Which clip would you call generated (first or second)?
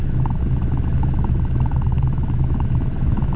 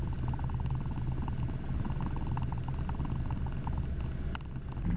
first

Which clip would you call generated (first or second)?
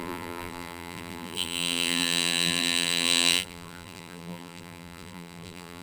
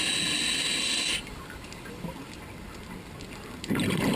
first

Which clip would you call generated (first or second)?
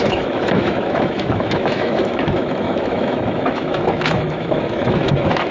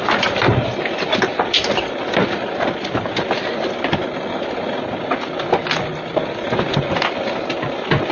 first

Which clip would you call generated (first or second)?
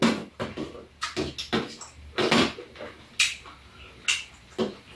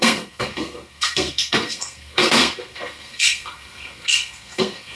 second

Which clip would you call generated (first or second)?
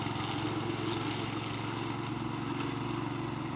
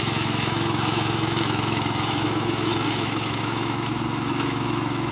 second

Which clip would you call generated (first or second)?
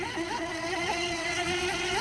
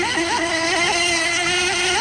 first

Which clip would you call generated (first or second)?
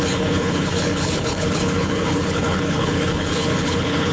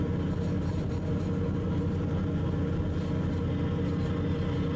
first